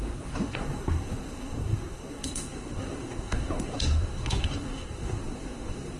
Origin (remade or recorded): remade